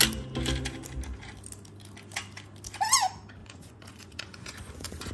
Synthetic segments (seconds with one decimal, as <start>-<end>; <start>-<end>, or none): 3.4-5.1